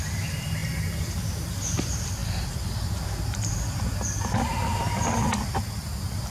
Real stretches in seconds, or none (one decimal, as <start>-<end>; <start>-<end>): 0.0-6.3